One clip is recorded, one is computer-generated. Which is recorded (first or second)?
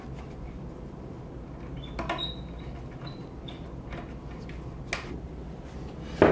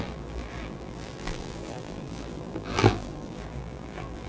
first